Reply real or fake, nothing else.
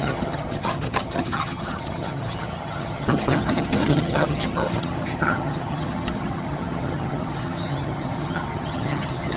fake